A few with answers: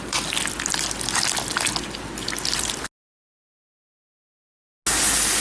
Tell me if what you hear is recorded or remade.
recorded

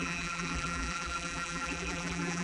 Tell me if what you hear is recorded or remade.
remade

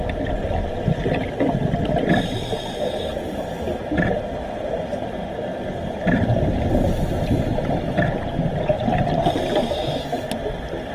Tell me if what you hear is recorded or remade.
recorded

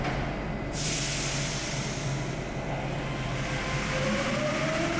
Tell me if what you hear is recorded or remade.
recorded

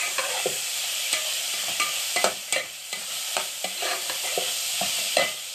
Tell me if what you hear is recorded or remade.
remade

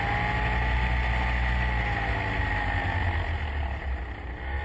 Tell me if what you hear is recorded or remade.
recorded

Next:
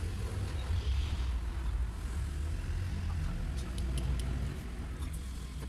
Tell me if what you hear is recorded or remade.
recorded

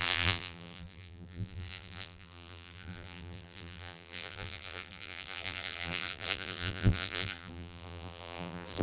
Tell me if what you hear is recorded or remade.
remade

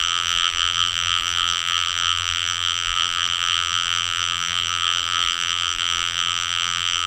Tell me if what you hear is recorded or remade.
remade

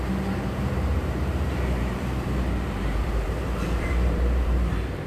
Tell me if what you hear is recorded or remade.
remade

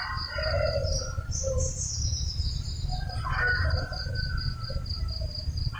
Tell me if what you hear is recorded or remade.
remade